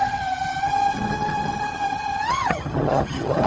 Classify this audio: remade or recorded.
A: remade